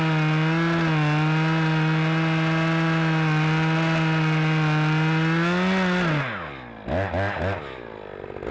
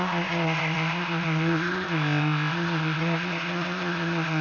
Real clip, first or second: first